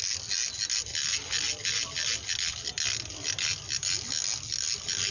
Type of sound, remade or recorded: recorded